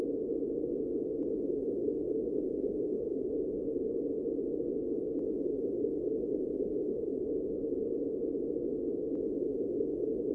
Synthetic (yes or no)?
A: yes